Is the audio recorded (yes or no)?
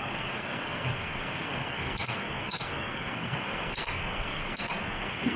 no